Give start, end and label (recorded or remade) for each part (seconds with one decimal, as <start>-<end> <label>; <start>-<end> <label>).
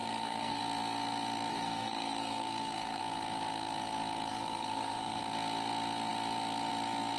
0.0-0.6 remade; 0.6-1.5 recorded; 1.5-3.0 remade; 3.0-4.3 recorded; 4.3-5.2 remade; 5.2-7.2 recorded